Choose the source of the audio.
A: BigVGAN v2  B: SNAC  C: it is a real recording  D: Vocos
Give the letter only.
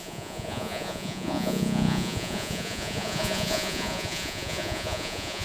D